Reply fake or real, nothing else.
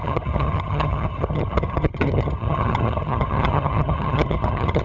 fake